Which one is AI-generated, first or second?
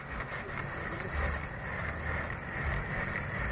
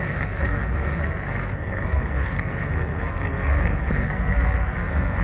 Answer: second